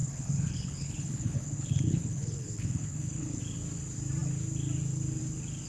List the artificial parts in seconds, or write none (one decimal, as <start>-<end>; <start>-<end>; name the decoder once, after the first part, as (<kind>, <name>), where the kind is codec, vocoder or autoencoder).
0.0-3.4 (codec, HILCodec)